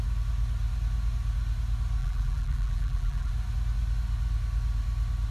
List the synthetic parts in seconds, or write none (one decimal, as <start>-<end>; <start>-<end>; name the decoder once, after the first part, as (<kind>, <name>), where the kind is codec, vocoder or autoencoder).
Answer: 2.0-3.3 (vocoder, BigVGAN v2)

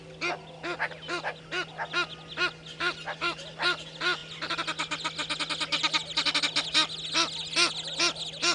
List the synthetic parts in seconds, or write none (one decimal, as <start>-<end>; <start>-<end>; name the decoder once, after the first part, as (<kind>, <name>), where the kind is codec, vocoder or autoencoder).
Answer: none

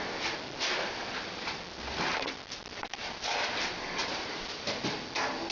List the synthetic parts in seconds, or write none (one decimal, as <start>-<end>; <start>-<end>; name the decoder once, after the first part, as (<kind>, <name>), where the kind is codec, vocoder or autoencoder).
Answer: 4.0-4.6 (vocoder, BigVGAN v2)

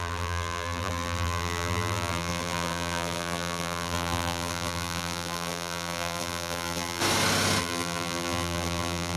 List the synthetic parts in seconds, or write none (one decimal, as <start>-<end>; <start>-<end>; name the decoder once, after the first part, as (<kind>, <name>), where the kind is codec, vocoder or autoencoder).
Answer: 0.0-7.0 (vocoder, BigVGAN v2); 7.6-9.2

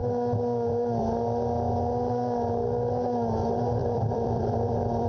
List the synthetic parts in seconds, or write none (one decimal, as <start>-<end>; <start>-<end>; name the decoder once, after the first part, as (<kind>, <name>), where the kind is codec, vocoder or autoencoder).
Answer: 3.8-5.1 (vocoder, BigVGAN v2)

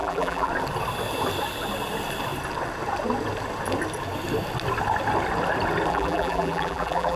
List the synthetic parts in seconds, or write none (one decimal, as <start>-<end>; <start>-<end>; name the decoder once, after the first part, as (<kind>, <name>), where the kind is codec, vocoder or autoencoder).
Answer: 0.0-0.5 (vocoder, BigVGAN v2); 5.9-7.2